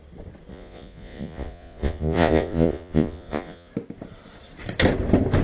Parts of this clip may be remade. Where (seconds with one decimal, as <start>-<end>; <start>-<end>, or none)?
0.5-3.7